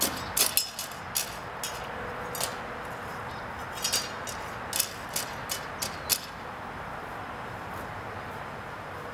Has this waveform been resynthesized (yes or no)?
no